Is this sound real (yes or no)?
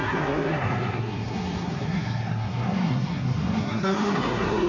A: no